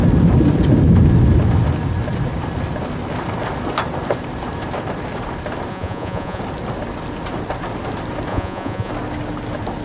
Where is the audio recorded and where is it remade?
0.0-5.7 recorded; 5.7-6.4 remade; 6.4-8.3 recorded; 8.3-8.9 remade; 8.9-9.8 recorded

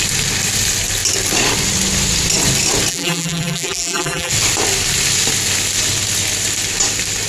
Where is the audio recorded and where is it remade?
0.0-2.9 recorded; 2.9-4.3 remade; 4.3-7.3 recorded

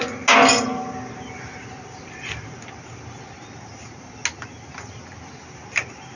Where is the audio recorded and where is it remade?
0.0-6.2 recorded

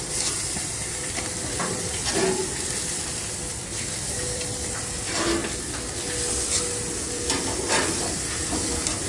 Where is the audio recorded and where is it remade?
0.0-2.0 remade; 2.0-2.9 recorded; 2.9-5.4 remade; 5.4-7.7 recorded; 7.7-9.1 remade

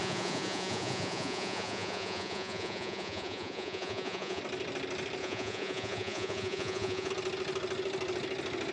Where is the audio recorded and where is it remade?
0.0-4.4 remade; 4.4-5.2 recorded; 5.2-7.1 remade; 7.1-8.7 recorded

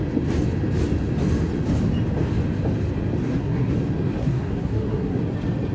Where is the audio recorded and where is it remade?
0.0-3.2 recorded; 3.2-3.7 remade; 3.7-4.2 recorded; 4.2-5.2 remade; 5.2-5.7 recorded

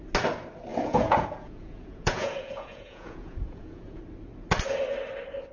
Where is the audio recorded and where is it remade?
0.0-0.7 recorded; 0.7-4.0 remade; 4.0-5.5 recorded

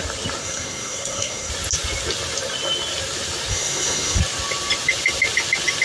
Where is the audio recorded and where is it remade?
0.0-0.4 recorded; 0.4-1.5 remade; 1.5-3.5 recorded; 3.5-4.2 remade; 4.2-5.8 recorded